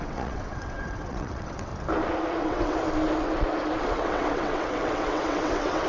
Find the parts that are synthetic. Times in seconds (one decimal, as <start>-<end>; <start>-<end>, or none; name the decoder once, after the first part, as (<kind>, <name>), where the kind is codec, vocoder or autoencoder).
0.0-1.7 (vocoder, WaveNeXt); 2.4-2.8; 3.8-5.9